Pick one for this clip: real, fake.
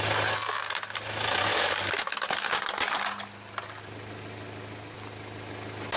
real